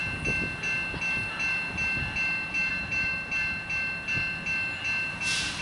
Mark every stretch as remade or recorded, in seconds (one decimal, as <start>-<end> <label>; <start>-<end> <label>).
0.0-2.7 recorded; 2.7-3.1 remade; 3.1-5.1 recorded; 5.1-5.6 remade